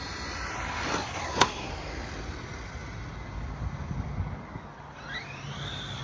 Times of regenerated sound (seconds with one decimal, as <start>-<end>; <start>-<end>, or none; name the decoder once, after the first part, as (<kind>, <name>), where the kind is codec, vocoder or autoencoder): 1.2-1.7 (codec, SNAC)